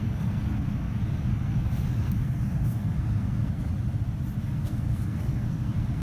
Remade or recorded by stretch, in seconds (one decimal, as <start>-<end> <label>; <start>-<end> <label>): 0.0-3.7 remade; 3.7-4.4 recorded; 4.4-6.0 remade